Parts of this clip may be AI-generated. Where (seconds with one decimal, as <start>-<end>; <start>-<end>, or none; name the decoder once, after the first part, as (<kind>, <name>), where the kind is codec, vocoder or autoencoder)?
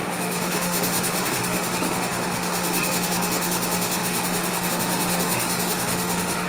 0.0-6.5 (autoencoder, DAC-VAE)